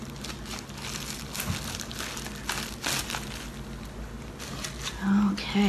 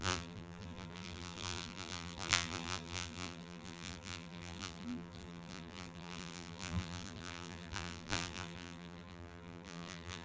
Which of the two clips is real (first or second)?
first